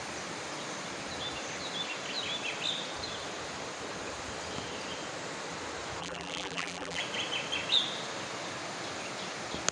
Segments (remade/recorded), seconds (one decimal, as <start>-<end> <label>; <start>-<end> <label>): 0.0-6.0 recorded; 6.0-7.0 remade; 7.0-9.7 recorded